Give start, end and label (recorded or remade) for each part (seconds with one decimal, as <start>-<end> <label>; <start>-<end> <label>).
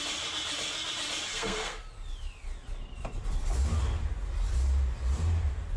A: 0.0-1.3 recorded; 1.3-1.8 remade; 1.8-5.8 recorded